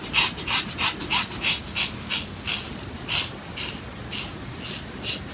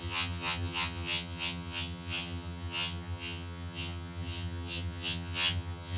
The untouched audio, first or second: first